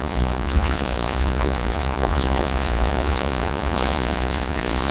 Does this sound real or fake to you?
fake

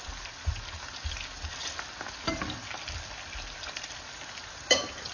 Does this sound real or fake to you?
real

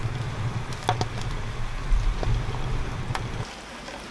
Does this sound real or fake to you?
real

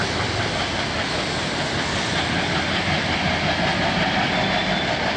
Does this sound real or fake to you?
real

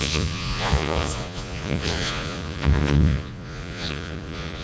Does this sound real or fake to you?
fake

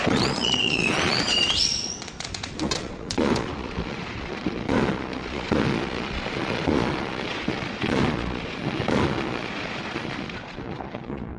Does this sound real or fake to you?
fake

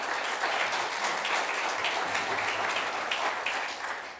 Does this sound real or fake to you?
real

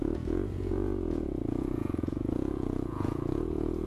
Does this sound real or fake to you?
fake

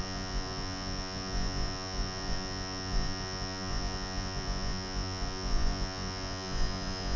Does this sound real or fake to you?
fake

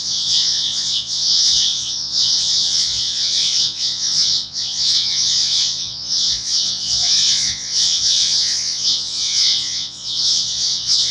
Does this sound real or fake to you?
fake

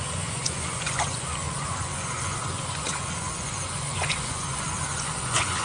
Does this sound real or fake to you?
fake